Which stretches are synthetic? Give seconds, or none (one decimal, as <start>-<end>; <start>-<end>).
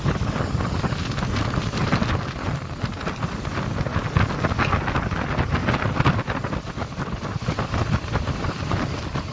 none